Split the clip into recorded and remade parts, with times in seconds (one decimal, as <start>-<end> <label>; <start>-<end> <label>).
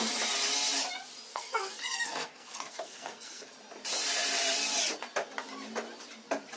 0.0-1.3 recorded; 1.3-3.5 remade; 3.5-6.6 recorded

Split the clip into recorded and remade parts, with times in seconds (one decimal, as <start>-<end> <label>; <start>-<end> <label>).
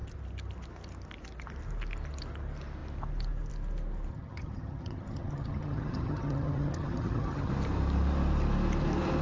0.0-4.1 recorded; 4.1-7.5 remade; 7.5-9.2 recorded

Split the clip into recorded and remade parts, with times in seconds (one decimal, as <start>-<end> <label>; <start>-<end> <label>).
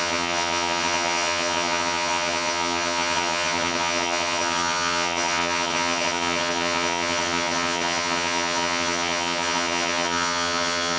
0.0-11.0 remade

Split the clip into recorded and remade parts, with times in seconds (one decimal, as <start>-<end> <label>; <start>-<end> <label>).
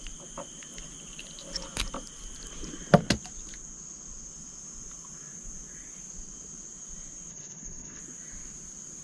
0.0-7.3 recorded; 7.3-8.0 remade; 8.0-9.0 recorded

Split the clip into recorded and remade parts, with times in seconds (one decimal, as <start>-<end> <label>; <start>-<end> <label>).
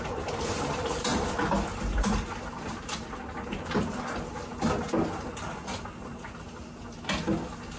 0.0-7.8 recorded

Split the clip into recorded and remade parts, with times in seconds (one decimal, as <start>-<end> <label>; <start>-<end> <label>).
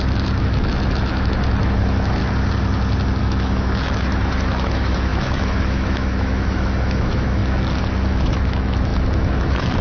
0.0-2.2 remade; 2.2-3.2 recorded; 3.2-7.4 remade; 7.4-8.1 recorded; 8.1-9.8 remade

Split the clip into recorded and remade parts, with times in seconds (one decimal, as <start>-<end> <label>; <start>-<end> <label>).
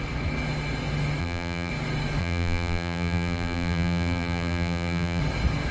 0.0-1.2 recorded; 1.2-1.7 remade; 1.7-2.2 recorded; 2.2-5.2 remade; 5.2-5.7 recorded